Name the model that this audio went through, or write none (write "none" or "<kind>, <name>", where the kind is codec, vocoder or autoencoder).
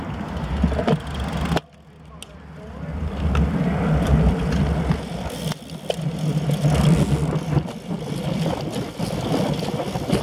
none